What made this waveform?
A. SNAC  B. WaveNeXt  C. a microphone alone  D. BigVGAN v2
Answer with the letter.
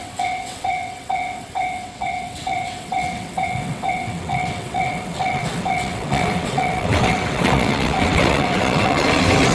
B